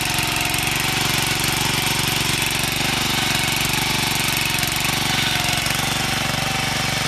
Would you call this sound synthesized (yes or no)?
no